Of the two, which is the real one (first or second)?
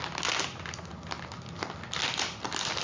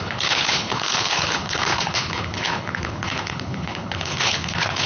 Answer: first